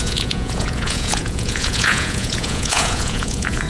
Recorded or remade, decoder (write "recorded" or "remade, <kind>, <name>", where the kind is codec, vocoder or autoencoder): remade, vocoder, Vocos